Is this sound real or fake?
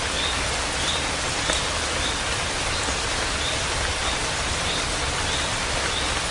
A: real